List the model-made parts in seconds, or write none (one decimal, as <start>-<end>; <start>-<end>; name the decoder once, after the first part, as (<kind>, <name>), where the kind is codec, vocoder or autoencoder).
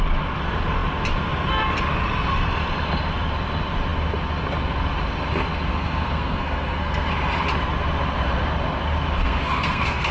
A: 5.7-7.1 (codec, SNAC); 9.2-10.1